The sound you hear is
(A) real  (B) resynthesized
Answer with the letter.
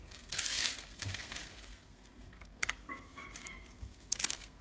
B